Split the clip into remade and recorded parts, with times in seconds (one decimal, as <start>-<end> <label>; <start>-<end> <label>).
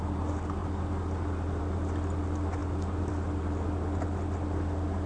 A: 0.0-5.1 recorded